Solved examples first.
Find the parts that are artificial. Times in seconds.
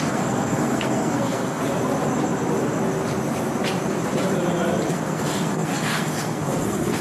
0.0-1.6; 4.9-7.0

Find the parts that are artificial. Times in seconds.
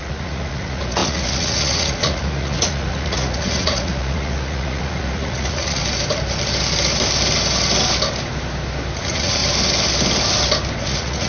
0.0-5.8; 9.0-9.4; 10.8-11.3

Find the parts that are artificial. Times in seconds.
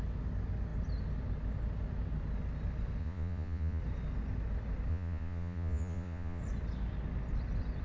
3.0-3.8; 4.9-6.4